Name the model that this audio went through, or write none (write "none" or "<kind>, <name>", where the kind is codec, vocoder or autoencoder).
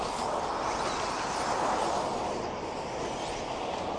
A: none